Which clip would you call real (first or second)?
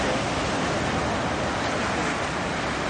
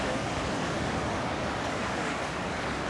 first